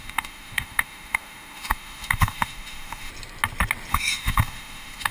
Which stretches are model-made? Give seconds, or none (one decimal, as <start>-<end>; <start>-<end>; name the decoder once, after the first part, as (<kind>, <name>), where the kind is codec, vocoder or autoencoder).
0.0-3.1 (autoencoder, DAC-VAE); 3.9-5.1